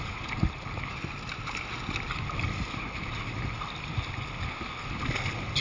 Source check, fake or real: real